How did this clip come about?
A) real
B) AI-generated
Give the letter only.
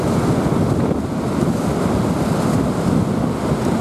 A